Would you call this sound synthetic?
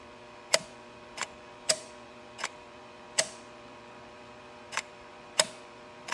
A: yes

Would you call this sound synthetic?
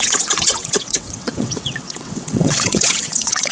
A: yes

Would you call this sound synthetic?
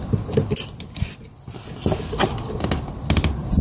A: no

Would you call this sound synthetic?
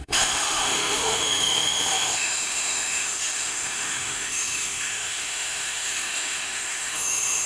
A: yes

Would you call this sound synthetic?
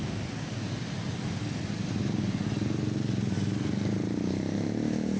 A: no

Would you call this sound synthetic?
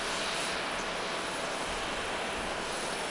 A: no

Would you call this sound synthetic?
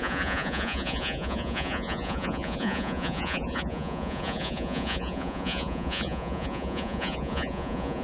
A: yes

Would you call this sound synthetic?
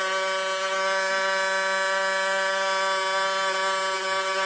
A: no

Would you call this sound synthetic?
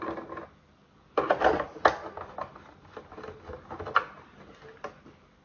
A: no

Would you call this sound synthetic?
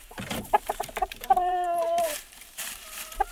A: yes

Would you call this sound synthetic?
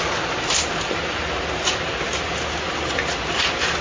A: no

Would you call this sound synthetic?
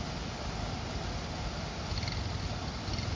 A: no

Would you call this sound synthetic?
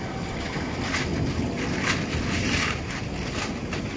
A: no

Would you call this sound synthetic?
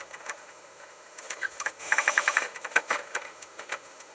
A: yes